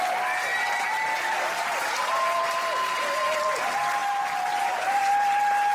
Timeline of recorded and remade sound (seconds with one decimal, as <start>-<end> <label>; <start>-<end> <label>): 0.0-1.6 recorded; 1.6-2.9 remade; 2.9-4.0 recorded; 4.0-5.0 remade; 5.0-5.7 recorded